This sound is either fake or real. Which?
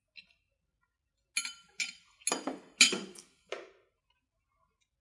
real